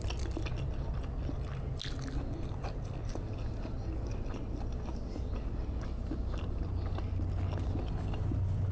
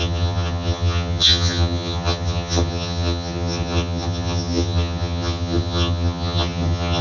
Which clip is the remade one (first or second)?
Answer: second